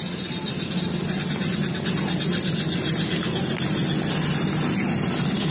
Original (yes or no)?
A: yes